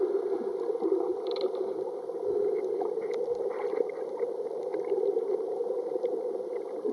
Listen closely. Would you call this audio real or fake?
fake